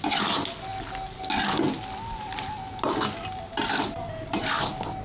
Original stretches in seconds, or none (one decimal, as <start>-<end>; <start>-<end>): 0.7-3.7